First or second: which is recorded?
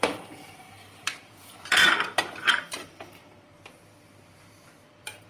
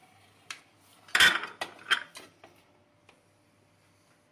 second